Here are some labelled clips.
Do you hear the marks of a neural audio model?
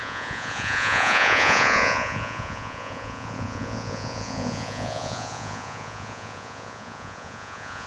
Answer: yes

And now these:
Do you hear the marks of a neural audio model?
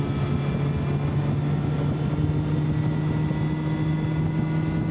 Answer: no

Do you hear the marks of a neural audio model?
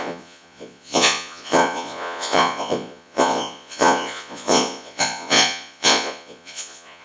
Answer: yes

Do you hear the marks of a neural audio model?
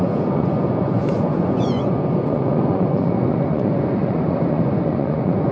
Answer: yes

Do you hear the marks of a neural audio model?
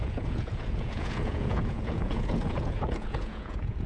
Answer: yes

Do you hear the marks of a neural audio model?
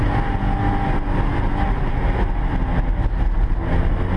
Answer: no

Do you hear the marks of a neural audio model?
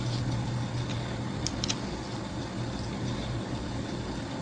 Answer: no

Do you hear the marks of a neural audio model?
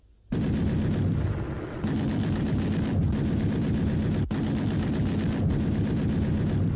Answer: no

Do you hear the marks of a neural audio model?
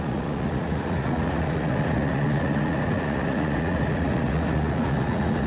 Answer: yes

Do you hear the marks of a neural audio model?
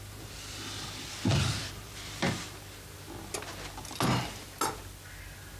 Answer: no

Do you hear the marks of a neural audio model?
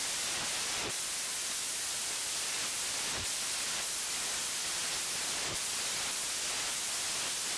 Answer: no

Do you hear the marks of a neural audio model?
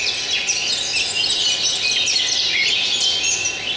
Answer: no